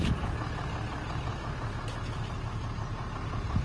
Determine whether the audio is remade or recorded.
recorded